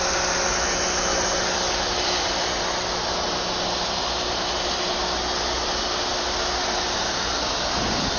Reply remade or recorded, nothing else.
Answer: recorded